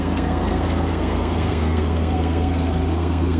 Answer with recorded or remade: remade